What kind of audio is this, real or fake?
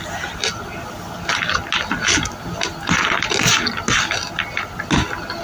real